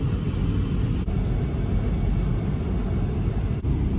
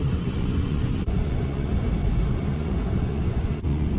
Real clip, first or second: first